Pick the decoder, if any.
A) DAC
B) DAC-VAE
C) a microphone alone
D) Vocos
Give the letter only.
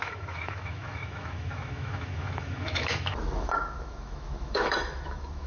B